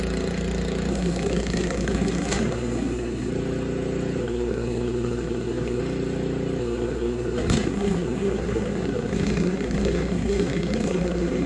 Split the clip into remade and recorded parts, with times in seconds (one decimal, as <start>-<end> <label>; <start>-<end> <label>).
0.0-0.9 recorded; 0.9-3.3 remade; 3.3-4.2 recorded; 4.2-5.8 remade; 5.8-6.6 recorded; 6.6-11.5 remade